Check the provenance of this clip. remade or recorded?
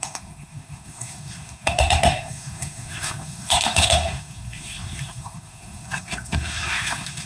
remade